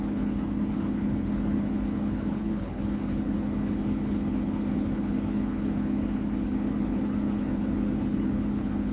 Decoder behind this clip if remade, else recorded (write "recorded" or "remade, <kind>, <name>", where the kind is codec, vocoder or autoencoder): remade, codec, HILCodec